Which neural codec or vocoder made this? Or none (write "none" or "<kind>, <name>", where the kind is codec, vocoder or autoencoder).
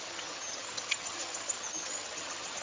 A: vocoder, HiFi-GAN